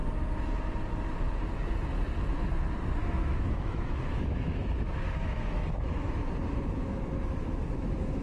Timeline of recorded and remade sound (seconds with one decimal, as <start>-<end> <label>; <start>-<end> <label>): 0.0-0.5 remade; 0.5-3.0 recorded; 3.0-8.2 remade